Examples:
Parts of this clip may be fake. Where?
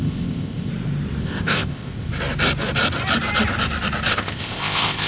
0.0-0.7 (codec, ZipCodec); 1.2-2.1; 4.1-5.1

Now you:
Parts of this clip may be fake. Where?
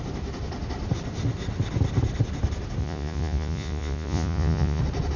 2.8-4.8 (vocoder, Vocos)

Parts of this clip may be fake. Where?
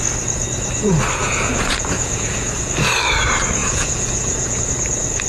1.2-2.7 (vocoder, Vocos); 3.6-4.6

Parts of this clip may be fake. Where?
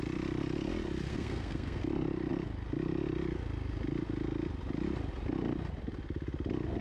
1.1-1.8 (codec, SNAC)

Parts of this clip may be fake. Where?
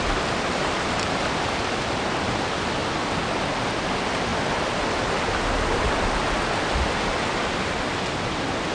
none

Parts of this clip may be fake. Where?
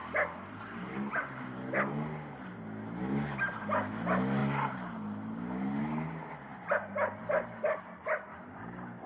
none